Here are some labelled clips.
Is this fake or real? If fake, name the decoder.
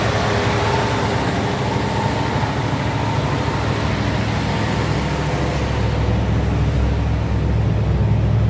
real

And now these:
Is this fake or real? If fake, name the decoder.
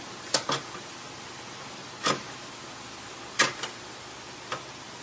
real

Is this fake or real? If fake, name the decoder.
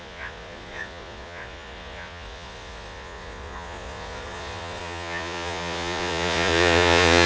fake, vocoder, Vocos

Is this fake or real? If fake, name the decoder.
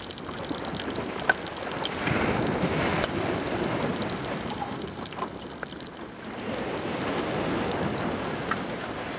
real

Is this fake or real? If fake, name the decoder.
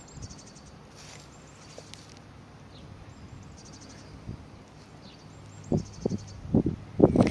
real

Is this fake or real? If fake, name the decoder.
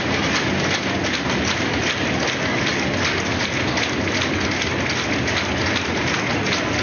real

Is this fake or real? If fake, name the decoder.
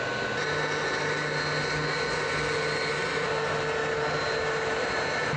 real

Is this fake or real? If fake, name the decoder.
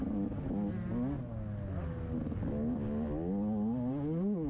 real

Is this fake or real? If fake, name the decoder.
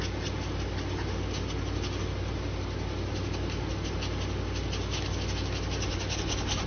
real